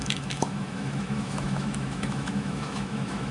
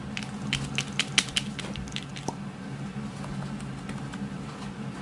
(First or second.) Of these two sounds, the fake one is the first